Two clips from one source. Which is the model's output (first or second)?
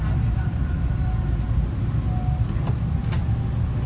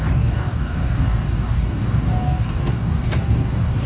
second